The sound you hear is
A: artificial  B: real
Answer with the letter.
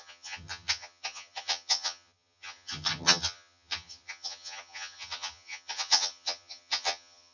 A